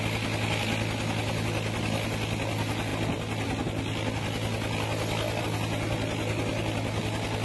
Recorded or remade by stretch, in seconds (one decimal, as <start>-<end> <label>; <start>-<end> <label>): 0.0-7.4 recorded